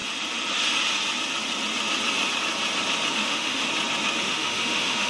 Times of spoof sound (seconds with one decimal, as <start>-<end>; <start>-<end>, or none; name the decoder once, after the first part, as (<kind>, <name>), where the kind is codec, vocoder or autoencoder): 3.1-3.7 (autoencoder, DAC-VAE); 4.2-5.1